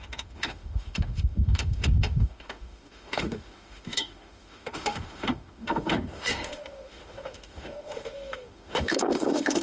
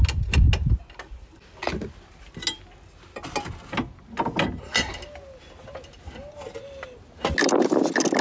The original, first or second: second